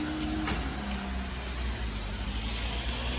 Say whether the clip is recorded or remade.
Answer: recorded